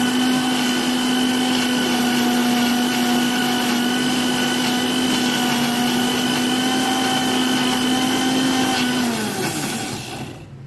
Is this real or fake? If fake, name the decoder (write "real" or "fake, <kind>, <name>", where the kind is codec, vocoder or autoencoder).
real